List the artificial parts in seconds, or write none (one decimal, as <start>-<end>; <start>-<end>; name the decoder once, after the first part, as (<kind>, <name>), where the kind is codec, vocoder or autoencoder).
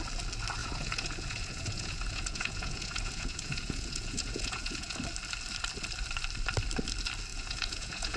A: 0.6-5.0 (vocoder, Vocos); 7.3-8.2